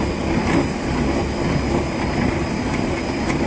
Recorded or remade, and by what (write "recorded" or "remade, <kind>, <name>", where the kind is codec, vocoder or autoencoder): recorded